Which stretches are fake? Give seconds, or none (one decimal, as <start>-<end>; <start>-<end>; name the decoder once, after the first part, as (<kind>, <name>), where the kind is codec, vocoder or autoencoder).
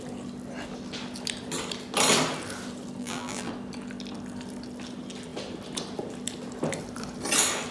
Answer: 3.0-3.5 (vocoder, BigVGAN v2)